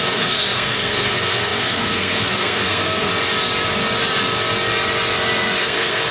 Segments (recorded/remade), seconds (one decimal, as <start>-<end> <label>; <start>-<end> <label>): 0.0-3.1 remade; 3.1-5.6 recorded; 5.6-6.1 remade